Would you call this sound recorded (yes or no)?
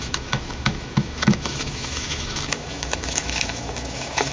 no